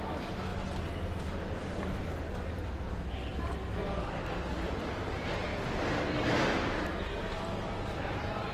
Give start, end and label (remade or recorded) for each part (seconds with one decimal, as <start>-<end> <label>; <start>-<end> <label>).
0.0-8.5 recorded